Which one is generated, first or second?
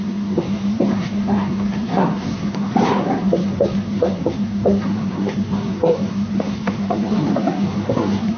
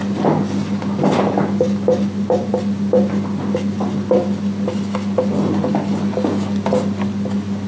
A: first